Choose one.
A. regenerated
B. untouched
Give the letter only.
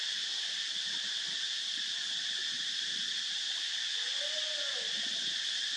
B